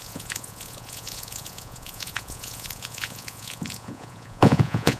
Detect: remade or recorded remade